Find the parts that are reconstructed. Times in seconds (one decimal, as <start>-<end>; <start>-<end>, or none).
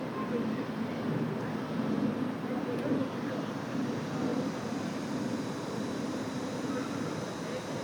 4.3-7.2